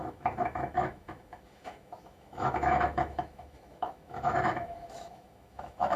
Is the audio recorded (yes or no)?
no